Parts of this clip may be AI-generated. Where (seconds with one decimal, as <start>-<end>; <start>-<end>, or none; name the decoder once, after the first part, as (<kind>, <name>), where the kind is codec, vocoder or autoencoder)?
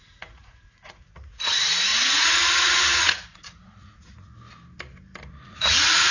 0.0-4.3 (vocoder, Vocos); 5.3-6.1